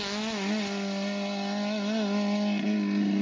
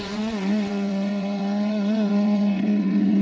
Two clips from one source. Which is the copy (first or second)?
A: second